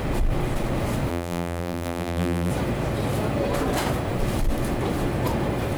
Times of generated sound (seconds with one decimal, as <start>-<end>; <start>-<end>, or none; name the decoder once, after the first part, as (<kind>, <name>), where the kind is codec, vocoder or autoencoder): 1.1-2.5 (vocoder, BigVGAN v2)